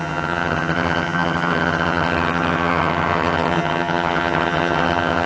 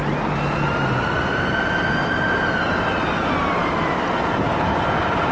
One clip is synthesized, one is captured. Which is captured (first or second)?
second